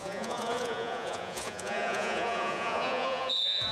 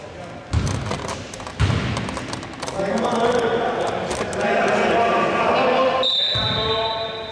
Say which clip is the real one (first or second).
second